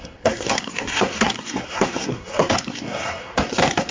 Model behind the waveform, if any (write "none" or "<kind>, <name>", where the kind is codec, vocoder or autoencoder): codec, SNAC